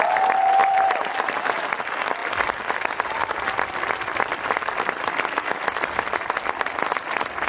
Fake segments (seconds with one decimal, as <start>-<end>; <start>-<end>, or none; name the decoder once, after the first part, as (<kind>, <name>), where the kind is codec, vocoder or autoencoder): 0.6-1.8 (vocoder, BigVGAN v2); 4.3-5.0